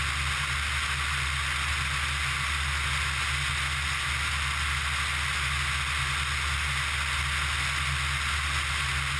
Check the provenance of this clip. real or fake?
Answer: real